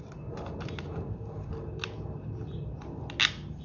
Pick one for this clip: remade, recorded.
recorded